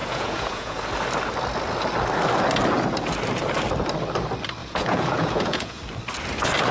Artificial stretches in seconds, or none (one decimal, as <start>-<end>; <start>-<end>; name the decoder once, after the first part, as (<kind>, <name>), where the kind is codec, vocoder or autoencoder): 0.0-0.8 (vocoder, Vocos); 4.6-5.8